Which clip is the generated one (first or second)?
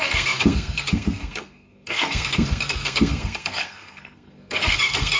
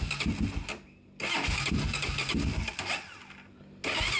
first